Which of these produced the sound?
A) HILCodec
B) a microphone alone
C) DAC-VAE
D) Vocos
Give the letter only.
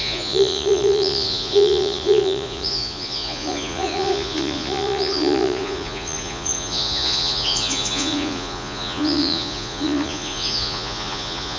D